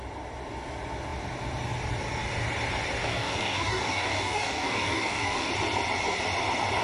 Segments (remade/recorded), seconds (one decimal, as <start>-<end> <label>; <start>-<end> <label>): 0.0-3.0 recorded; 3.0-5.5 remade; 5.5-6.8 recorded

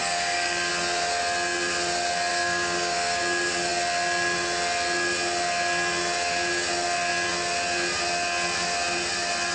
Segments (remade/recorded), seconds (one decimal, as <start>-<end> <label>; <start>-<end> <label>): 0.0-0.7 remade; 0.7-2.3 recorded; 2.3-3.2 remade; 3.2-9.5 recorded

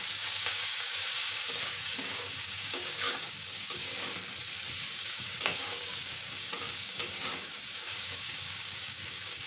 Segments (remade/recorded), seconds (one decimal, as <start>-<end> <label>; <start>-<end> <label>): 0.0-3.9 remade; 3.9-4.8 recorded; 4.8-9.5 remade

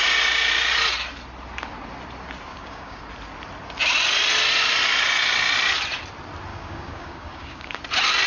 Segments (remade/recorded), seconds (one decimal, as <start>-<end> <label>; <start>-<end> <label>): 0.0-2.5 recorded; 2.5-3.0 remade; 3.0-6.5 recorded; 6.5-7.8 remade; 7.8-8.3 recorded

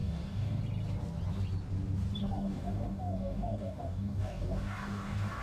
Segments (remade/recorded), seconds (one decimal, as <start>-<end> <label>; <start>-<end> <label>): 0.0-0.6 remade; 0.6-2.2 recorded; 2.2-5.4 remade

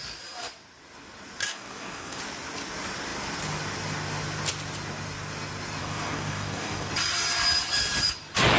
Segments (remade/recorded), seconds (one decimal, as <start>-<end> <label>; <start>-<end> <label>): 0.0-1.5 recorded; 1.5-2.2 remade; 2.2-5.8 recorded; 5.8-6.9 remade; 6.9-8.6 recorded

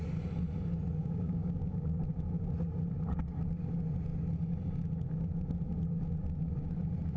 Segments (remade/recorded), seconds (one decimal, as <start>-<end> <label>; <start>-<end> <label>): 0.0-1.0 recorded; 1.0-2.0 remade; 2.0-7.2 recorded

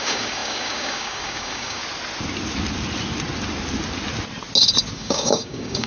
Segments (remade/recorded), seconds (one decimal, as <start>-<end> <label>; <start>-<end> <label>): 0.0-1.8 remade; 1.8-5.0 recorded; 5.0-5.9 remade